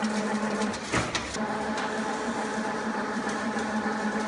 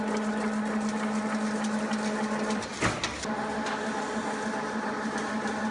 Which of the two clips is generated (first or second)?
first